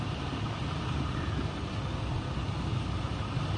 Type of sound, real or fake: real